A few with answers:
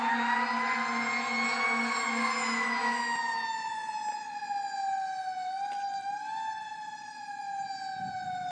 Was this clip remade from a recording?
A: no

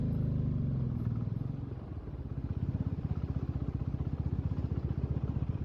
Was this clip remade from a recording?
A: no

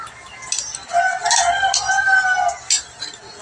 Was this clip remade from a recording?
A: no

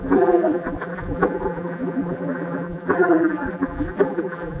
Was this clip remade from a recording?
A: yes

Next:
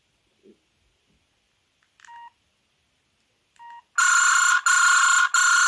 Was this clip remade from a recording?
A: no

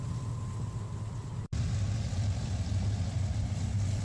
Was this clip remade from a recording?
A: no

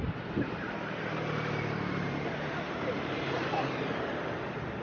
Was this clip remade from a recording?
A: yes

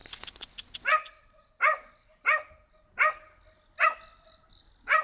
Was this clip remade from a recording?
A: no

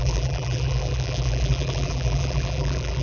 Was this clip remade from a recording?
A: yes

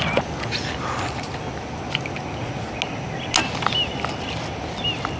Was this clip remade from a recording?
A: no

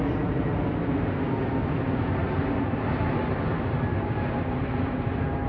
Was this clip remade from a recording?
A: no